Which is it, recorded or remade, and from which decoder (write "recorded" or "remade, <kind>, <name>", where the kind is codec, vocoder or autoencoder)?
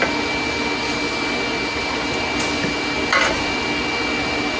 recorded